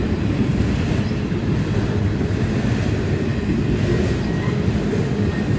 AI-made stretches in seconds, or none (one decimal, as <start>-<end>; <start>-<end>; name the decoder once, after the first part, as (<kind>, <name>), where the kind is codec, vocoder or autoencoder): none